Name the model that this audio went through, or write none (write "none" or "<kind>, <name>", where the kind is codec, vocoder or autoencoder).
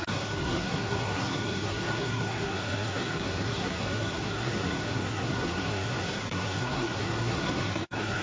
codec, SNAC